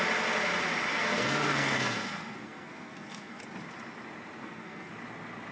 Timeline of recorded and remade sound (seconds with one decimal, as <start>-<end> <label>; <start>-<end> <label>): 0.0-0.9 recorded; 0.9-3.4 remade; 3.4-4.4 recorded; 4.4-4.9 remade; 4.9-5.5 recorded